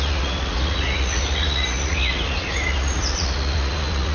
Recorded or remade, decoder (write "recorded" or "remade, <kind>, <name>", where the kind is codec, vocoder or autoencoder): remade, vocoder, Vocos